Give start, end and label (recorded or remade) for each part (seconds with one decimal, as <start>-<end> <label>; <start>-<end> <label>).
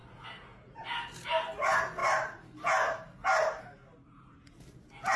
0.0-2.0 recorded; 2.0-3.6 remade; 3.6-5.2 recorded